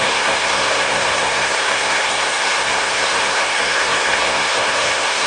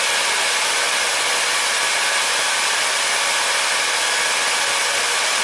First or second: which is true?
second